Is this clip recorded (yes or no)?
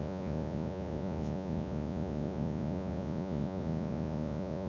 no